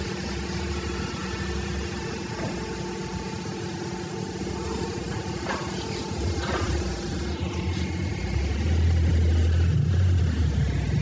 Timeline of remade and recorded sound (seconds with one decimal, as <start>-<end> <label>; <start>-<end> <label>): 0.0-11.0 recorded